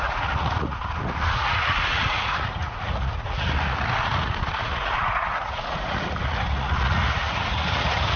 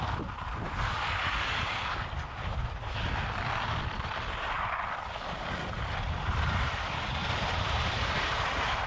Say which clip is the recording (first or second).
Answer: second